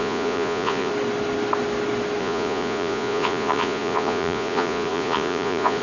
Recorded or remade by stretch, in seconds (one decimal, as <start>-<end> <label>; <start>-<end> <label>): 0.0-0.9 remade; 0.9-2.2 recorded; 2.2-5.8 remade